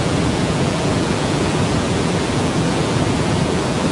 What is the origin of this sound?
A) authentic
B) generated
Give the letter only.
B